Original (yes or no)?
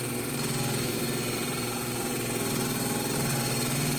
no